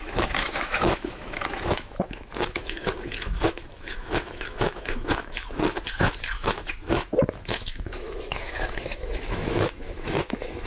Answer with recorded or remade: remade